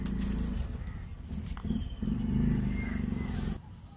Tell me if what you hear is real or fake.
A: real